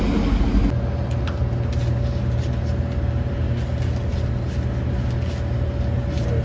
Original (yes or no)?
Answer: yes